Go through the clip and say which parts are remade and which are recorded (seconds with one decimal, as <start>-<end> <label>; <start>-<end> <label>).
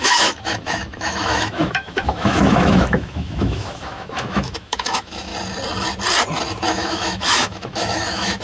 0.0-5.3 remade; 5.3-6.7 recorded; 6.7-8.4 remade